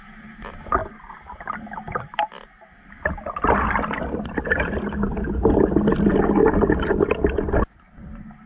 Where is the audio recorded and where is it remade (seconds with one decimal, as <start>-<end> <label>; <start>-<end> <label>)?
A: 0.0-8.5 recorded